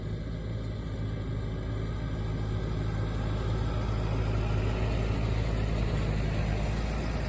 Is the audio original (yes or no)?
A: yes